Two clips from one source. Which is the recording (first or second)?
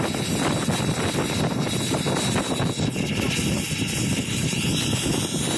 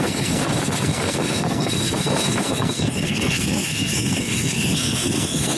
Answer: first